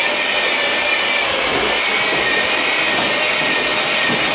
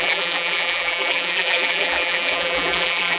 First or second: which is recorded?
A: first